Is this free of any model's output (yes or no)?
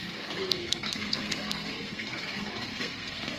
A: no